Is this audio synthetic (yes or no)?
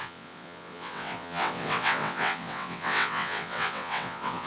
yes